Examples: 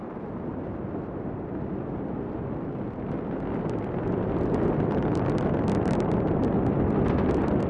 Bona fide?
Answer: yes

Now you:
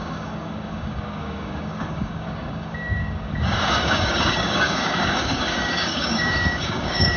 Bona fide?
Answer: no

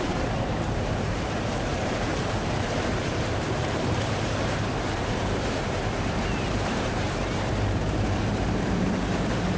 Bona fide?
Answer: no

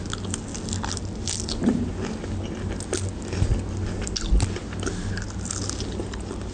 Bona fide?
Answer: yes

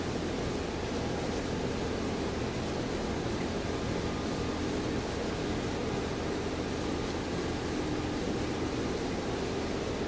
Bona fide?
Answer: yes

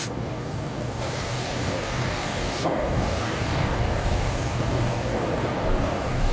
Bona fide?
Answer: no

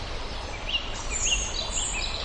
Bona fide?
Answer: yes